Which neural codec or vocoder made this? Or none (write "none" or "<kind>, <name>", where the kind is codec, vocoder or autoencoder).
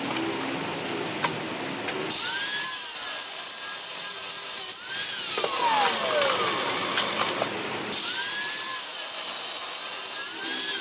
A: none